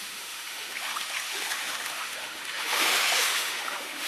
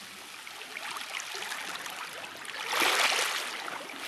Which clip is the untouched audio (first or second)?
second